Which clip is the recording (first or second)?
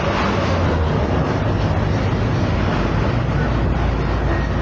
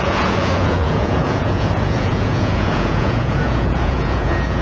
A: first